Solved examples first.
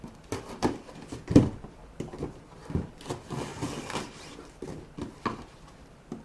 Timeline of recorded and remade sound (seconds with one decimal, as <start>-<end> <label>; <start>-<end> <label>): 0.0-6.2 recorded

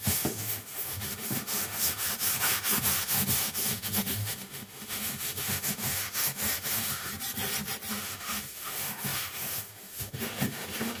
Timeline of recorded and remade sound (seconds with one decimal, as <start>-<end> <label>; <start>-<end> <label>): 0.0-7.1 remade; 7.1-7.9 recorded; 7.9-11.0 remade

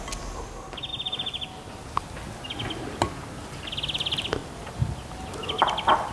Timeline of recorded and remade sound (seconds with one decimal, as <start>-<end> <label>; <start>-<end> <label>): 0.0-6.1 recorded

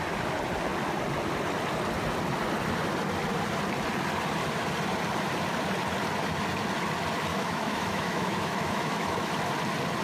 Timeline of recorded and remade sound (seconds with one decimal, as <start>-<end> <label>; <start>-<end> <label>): 0.0-7.3 recorded; 7.3-9.3 remade; 9.3-10.0 recorded

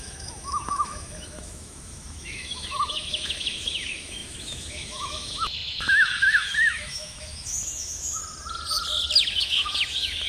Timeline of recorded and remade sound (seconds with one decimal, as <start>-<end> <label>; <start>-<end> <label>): 0.0-8.2 remade; 8.2-9.4 recorded; 9.4-10.3 remade

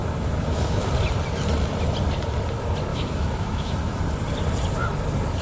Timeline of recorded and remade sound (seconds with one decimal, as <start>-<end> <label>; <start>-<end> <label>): 0.0-0.9 remade; 0.9-2.9 recorded; 2.9-4.0 remade; 4.0-5.4 recorded

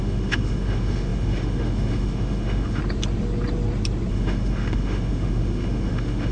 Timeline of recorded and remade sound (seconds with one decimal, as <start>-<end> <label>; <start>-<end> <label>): 0.0-2.8 remade; 2.8-4.1 recorded; 4.1-6.3 remade